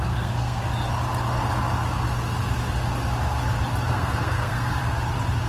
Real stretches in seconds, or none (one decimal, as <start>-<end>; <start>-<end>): 0.6-3.9; 4.8-5.5